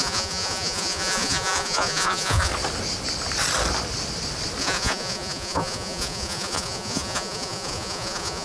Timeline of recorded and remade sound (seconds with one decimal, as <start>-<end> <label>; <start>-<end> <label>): 0.0-2.5 remade; 2.5-4.6 recorded; 4.6-8.4 remade